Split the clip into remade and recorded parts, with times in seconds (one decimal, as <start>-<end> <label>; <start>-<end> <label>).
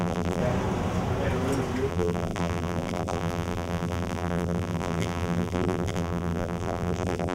0.0-0.4 remade; 0.4-1.9 recorded; 1.9-7.3 remade